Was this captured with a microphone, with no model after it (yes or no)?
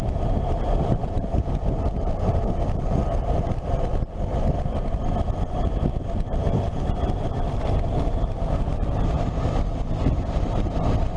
yes